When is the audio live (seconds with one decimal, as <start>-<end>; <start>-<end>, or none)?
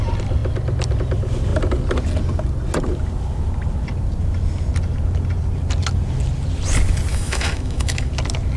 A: 0.0-7.1; 8.1-8.6